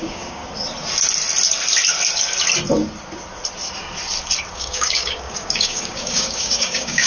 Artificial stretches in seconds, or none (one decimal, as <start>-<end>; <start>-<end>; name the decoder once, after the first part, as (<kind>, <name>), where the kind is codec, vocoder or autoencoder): 0.0-0.4 (codec, DAC); 4.5-7.1